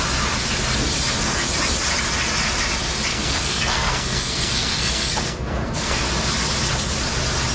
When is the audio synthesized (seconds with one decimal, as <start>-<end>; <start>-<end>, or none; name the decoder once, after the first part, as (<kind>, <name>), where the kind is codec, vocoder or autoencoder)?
3.1-6.0 (codec, SNAC)